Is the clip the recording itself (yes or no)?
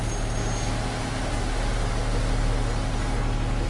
yes